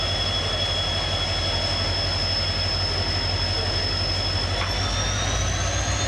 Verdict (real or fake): real